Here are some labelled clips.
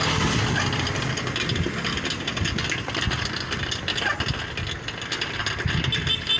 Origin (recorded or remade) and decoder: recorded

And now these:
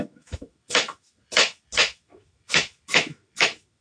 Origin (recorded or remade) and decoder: remade, autoencoder, DAC-VAE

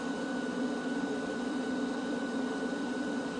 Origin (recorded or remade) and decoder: remade, vocoder, BigVGAN v2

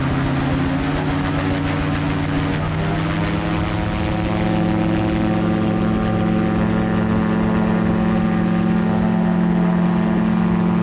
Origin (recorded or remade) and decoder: recorded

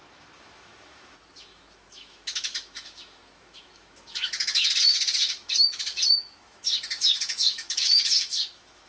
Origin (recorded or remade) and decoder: remade, autoencoder, DAC-VAE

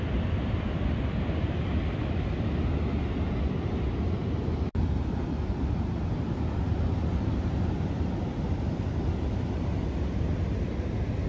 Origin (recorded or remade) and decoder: recorded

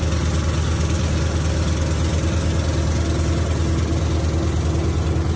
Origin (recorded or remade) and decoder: recorded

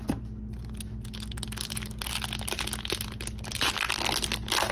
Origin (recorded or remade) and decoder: recorded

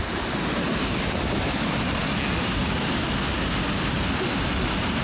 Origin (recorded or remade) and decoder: recorded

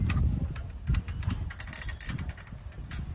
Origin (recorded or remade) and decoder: recorded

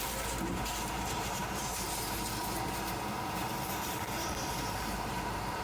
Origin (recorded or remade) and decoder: remade, vocoder, BigVGAN v2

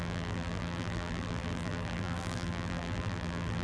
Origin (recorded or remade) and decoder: remade, vocoder, BigVGAN v2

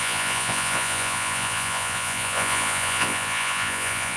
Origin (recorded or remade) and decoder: remade, vocoder, Vocos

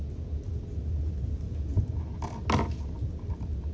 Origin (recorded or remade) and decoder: recorded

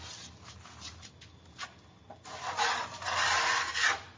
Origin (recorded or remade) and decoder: recorded